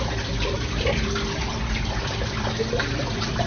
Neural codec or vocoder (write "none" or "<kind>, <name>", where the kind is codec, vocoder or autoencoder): vocoder, BigVGAN v2